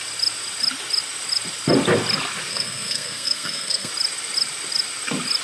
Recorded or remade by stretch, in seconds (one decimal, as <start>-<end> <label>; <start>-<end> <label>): 0.0-2.5 recorded; 2.5-3.9 remade; 3.9-5.4 recorded